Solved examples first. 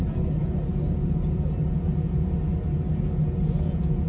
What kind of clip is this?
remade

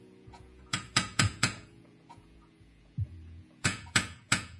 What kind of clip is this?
remade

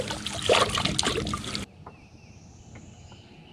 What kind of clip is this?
recorded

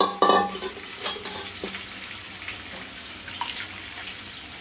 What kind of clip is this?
recorded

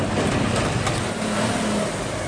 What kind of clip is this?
recorded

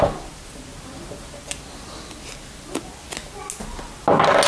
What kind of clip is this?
recorded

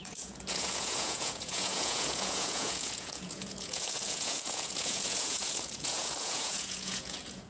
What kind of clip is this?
remade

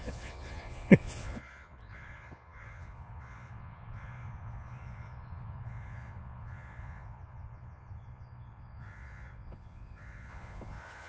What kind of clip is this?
remade